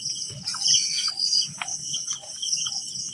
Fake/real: real